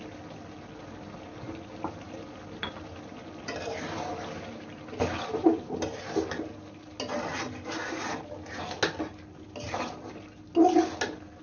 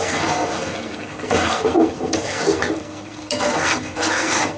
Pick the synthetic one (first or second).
second